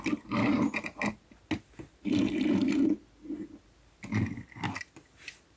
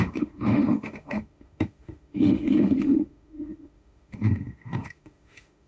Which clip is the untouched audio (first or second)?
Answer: first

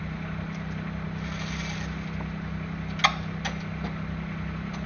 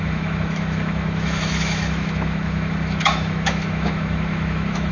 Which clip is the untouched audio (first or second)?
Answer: first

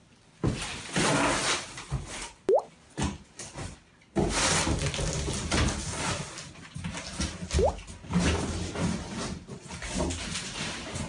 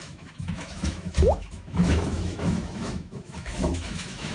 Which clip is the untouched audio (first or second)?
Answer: first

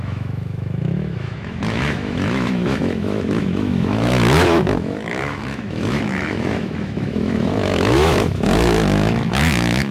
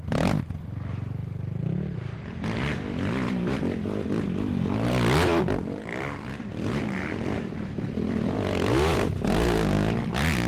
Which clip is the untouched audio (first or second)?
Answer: second